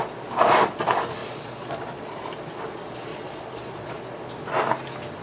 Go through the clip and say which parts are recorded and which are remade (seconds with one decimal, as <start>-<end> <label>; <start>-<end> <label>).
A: 0.0-1.2 recorded; 1.2-2.2 remade; 2.2-3.1 recorded; 3.1-4.0 remade; 4.0-5.2 recorded